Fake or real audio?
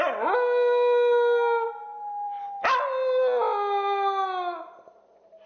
real